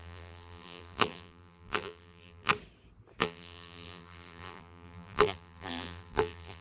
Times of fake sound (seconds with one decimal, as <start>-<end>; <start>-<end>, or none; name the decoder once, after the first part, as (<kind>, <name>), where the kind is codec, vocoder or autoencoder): 0.0-2.5 (vocoder, BigVGAN v2); 3.2-6.6